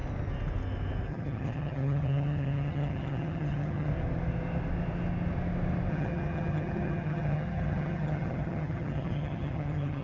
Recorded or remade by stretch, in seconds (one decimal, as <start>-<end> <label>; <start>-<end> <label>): 0.0-1.1 recorded; 1.1-3.9 remade; 3.9-5.9 recorded; 5.9-10.0 remade